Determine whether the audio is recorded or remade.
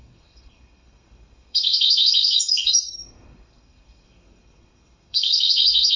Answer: remade